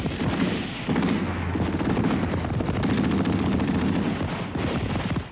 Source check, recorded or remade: recorded